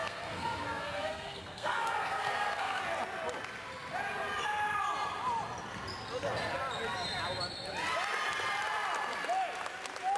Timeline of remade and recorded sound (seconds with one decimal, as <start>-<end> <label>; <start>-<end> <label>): 0.0-2.8 remade; 2.8-10.2 recorded